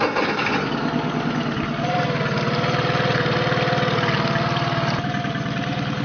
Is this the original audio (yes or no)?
yes